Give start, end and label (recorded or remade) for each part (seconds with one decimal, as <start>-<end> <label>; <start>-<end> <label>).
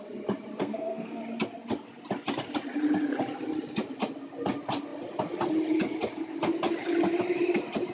0.0-0.6 recorded; 0.6-1.2 remade; 1.2-7.9 recorded